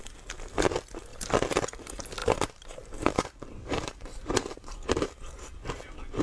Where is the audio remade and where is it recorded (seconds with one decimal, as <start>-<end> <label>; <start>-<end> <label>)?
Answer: 0.0-2.2 recorded; 2.2-5.2 remade; 5.2-6.2 recorded